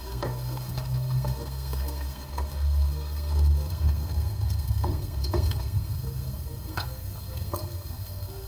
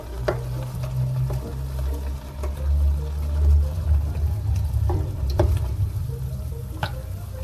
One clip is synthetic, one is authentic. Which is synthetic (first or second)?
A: first